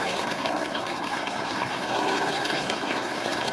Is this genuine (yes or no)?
no